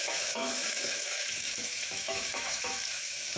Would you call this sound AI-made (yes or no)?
yes